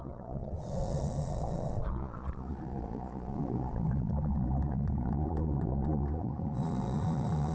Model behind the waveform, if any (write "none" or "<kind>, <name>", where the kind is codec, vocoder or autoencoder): vocoder, Vocos